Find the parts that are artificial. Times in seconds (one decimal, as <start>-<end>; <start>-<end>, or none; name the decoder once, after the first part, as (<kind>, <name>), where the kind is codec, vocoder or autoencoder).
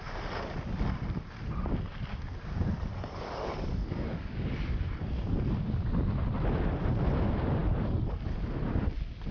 2.9-4.8 (codec, DAC)